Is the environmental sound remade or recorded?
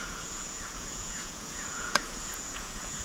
remade